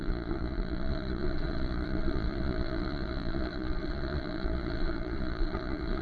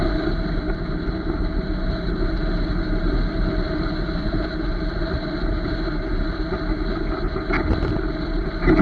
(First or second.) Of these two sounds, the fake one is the first